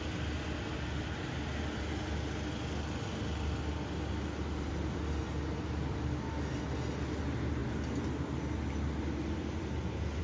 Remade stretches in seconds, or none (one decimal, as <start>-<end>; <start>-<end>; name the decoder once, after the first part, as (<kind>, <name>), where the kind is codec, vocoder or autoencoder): none